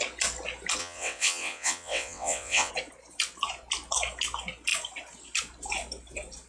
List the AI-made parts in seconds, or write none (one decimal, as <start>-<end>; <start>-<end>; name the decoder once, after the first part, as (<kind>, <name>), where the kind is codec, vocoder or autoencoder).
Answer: 0.8-2.7 (vocoder, WaveNeXt)